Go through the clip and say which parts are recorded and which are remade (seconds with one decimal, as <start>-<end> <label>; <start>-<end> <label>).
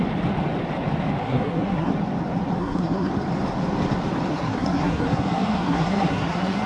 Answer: 0.0-1.2 recorded; 1.2-1.9 remade; 1.9-2.6 recorded; 2.6-3.1 remade; 3.1-4.3 recorded; 4.3-6.7 remade